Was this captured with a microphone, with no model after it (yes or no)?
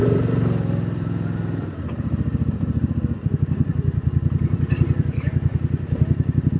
no